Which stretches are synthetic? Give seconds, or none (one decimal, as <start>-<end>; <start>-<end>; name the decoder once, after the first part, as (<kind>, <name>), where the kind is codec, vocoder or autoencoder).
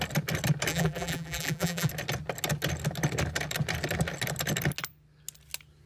0.7-1.9 (vocoder, BigVGAN v2)